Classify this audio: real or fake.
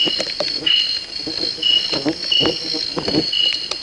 real